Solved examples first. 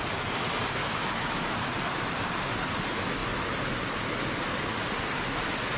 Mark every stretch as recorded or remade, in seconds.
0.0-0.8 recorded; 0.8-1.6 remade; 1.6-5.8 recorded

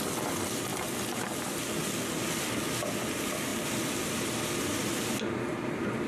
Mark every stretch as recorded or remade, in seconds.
0.0-6.1 recorded

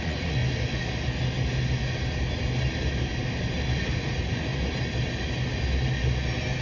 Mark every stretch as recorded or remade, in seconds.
0.0-0.4 remade; 0.4-3.9 recorded; 3.9-4.5 remade; 4.5-6.6 recorded